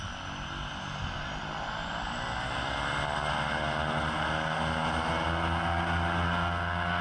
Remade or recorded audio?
recorded